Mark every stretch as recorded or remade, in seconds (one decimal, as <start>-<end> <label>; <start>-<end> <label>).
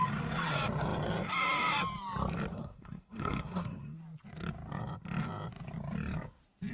0.0-2.5 recorded; 2.5-4.0 remade; 4.0-6.7 recorded